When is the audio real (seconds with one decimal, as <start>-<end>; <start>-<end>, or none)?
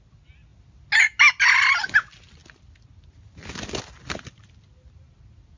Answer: 0.0-5.6